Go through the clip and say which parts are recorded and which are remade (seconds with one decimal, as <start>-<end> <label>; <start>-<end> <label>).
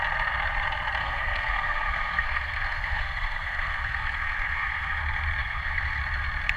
0.0-1.0 recorded; 1.0-5.0 remade; 5.0-5.4 recorded; 5.4-6.0 remade; 6.0-6.6 recorded